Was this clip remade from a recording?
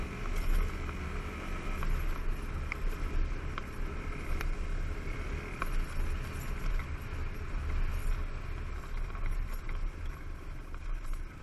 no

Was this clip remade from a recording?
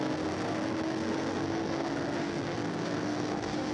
yes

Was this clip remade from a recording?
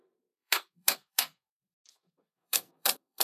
yes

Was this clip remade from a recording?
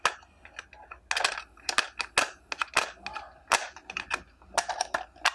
no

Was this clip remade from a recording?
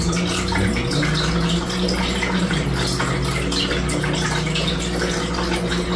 no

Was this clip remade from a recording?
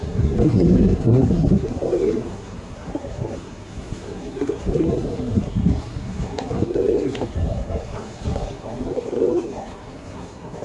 yes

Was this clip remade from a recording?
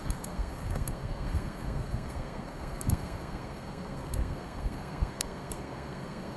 yes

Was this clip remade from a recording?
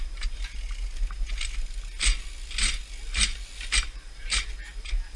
no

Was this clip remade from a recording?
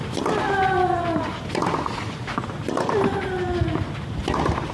no